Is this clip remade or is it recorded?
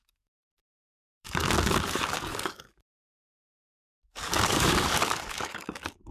remade